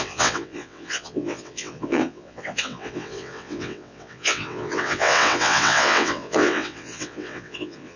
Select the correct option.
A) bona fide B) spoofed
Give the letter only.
B